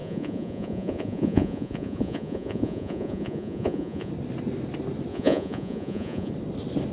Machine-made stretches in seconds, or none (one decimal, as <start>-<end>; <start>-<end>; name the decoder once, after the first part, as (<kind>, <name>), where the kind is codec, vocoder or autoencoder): 0.0-4.1 (vocoder, Vocos); 5.1-6.3